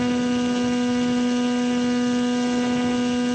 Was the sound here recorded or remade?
recorded